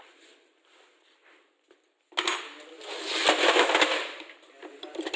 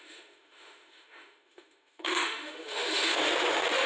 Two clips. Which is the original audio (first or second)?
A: first